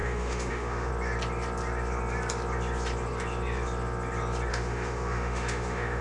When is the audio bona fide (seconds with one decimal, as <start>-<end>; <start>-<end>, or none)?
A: 0.9-4.5

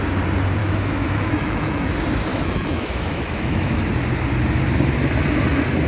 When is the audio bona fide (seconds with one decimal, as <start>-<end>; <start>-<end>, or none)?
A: 0.0-0.6; 1.9-2.3; 3.8-5.9

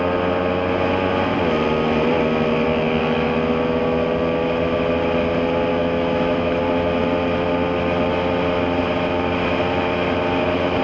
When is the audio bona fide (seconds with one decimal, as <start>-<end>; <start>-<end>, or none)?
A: 0.0-5.7; 6.6-10.8

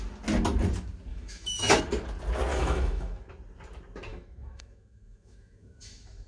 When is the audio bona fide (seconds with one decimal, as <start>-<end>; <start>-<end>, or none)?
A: 0.0-1.1; 1.8-2.5; 3.3-4.1

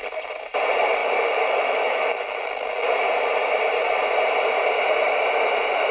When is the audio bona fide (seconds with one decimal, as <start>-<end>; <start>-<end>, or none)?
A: 0.0-1.0; 2.4-5.9